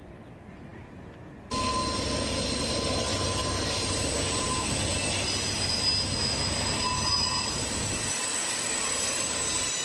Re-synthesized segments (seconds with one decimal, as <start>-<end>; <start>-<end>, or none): none